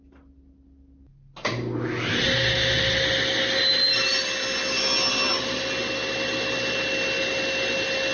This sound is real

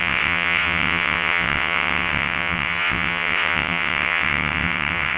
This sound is fake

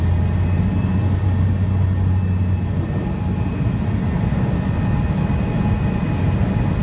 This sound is real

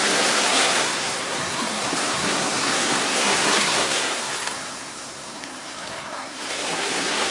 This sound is fake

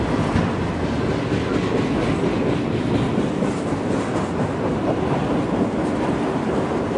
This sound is real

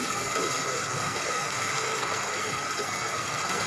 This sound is fake